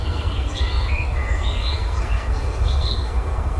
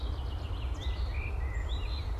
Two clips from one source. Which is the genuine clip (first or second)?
second